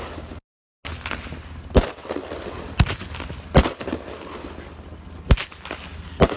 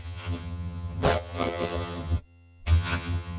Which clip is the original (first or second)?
first